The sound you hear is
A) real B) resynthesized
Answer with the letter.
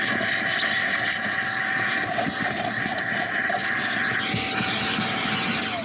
A